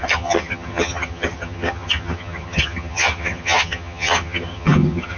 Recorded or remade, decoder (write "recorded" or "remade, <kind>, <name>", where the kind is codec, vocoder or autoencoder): remade, vocoder, HiFi-GAN